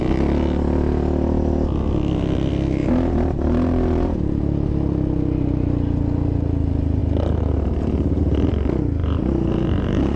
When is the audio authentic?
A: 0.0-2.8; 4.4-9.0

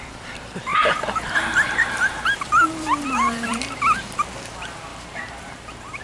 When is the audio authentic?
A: 0.0-0.7; 4.3-4.9

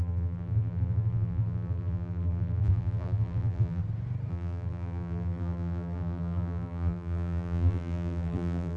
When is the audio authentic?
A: 3.8-4.3

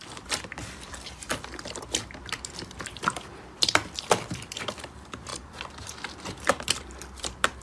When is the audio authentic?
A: none

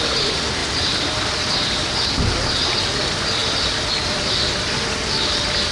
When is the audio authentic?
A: 0.0-5.7

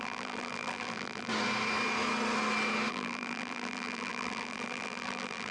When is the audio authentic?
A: 1.3-2.9

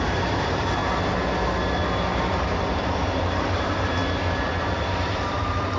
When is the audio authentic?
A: 0.8-2.8; 4.0-4.6

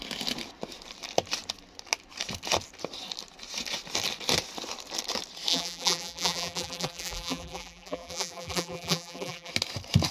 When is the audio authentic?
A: 0.0-5.5; 9.5-10.1